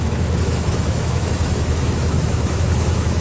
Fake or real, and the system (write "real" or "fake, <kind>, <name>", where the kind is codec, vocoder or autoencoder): fake, autoencoder, DAC-VAE